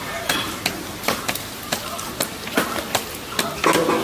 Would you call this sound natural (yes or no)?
yes